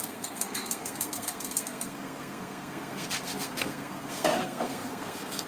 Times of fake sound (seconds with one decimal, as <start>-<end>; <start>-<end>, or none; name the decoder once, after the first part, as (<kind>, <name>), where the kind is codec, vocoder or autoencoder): 0.0-5.5 (codec, SNAC)